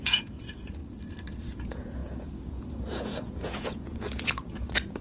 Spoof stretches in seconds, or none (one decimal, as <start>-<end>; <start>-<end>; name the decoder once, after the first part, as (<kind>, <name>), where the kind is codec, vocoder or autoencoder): 0.0-0.8 (vocoder, Vocos); 1.4-5.0